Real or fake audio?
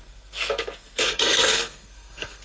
fake